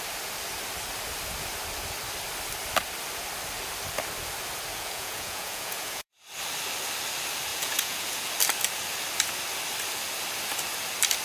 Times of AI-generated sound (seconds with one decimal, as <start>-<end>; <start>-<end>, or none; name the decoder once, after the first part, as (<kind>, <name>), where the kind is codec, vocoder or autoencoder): 4.7-6.1 (vocoder, Vocos); 7.5-8.3